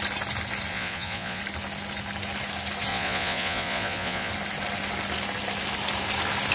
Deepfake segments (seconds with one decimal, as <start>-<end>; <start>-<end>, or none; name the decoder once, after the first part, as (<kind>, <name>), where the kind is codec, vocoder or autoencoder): 0.7-1.4 (vocoder, Vocos); 2.9-4.3